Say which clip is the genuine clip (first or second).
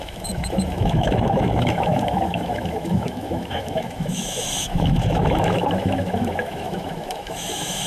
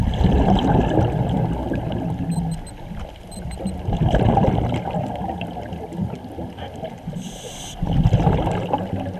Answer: second